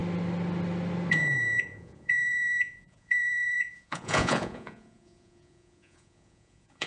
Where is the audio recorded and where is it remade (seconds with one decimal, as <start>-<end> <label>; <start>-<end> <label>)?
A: 0.0-1.1 recorded; 1.1-6.9 remade